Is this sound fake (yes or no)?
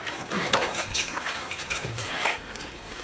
yes